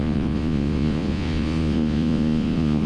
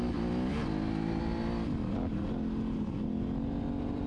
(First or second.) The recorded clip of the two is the second